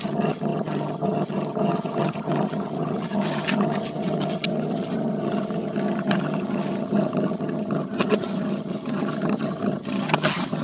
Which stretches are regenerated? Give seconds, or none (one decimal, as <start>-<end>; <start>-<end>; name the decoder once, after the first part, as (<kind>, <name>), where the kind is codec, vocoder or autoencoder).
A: 0.0-10.6 (vocoder, HiFi-GAN)